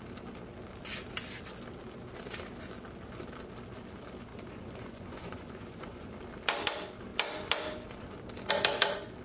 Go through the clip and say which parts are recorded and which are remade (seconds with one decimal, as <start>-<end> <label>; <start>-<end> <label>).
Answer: 0.0-4.3 recorded; 4.3-6.1 remade; 6.1-9.2 recorded